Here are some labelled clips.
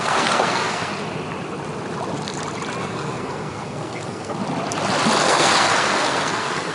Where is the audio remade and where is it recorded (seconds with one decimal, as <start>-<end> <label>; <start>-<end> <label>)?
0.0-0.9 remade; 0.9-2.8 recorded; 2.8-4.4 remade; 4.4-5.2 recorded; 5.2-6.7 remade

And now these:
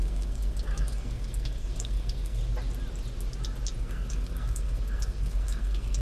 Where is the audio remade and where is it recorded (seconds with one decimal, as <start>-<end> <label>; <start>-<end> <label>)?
0.0-2.4 remade; 2.4-3.8 recorded; 3.8-6.0 remade

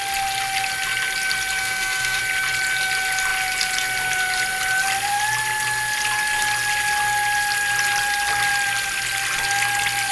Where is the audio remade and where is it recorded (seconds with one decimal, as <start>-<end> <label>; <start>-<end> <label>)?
0.0-1.6 recorded; 1.6-2.2 remade; 2.2-10.1 recorded

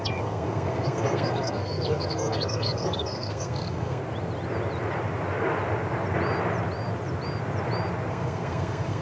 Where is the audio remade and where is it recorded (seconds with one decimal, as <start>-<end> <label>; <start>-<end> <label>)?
0.0-4.0 remade; 4.0-8.1 recorded; 8.1-9.0 remade

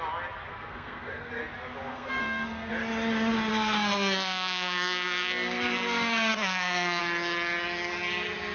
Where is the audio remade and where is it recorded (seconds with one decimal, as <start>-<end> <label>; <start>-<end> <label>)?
0.0-0.5 recorded; 0.5-1.4 remade; 1.4-1.9 recorded; 1.9-2.7 remade; 2.7-3.5 recorded; 3.5-7.0 remade; 7.0-8.5 recorded